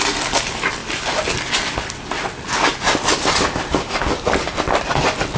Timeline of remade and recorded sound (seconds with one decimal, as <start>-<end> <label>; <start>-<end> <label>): 0.0-5.4 recorded

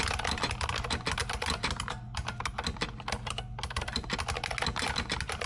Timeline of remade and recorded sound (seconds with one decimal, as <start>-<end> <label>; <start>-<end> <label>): 0.0-5.5 recorded

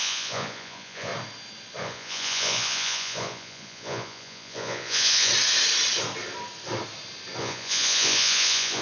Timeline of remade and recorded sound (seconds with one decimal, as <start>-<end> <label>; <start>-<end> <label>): 0.0-1.1 remade; 1.1-1.8 recorded; 1.8-5.3 remade; 5.3-7.4 recorded; 7.4-8.8 remade